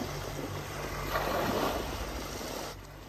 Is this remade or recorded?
recorded